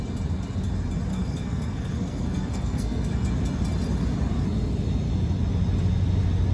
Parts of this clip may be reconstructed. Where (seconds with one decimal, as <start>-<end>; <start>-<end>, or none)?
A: 1.1-3.3